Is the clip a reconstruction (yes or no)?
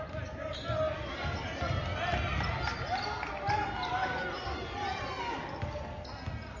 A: no